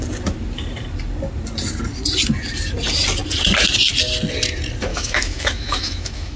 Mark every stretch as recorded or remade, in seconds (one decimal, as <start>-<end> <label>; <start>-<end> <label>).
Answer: 0.0-4.9 recorded; 4.9-6.4 remade

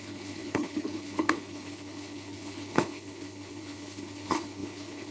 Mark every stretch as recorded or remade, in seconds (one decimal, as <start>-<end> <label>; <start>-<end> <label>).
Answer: 0.0-5.1 remade

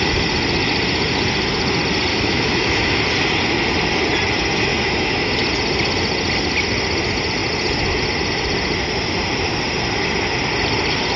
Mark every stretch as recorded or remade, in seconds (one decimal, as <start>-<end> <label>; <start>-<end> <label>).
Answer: 0.0-2.1 recorded; 2.1-3.0 remade; 3.0-4.7 recorded; 4.7-5.3 remade; 5.3-11.2 recorded